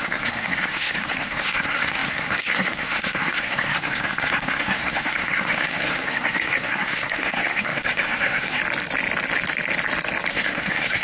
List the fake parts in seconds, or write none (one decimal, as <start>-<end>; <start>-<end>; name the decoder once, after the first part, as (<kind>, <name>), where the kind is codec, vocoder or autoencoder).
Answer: 0.0-8.6 (codec, SNAC); 10.3-11.0